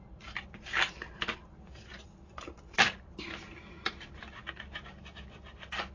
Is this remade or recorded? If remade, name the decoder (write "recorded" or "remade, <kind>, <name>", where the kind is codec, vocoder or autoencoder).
recorded